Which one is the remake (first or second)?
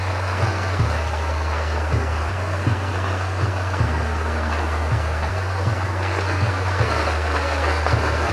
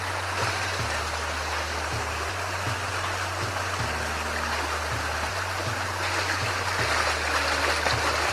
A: first